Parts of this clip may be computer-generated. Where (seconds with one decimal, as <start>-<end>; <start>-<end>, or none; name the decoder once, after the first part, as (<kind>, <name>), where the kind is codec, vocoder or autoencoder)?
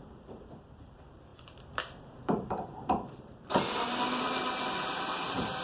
0.0-5.6 (vocoder, BigVGAN v2)